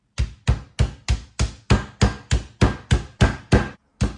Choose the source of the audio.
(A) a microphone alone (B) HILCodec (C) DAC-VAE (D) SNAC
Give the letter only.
A